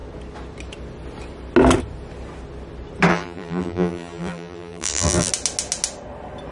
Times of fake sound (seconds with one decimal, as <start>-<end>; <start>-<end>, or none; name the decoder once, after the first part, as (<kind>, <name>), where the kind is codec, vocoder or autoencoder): 3.1-5.3 (vocoder, BigVGAN v2)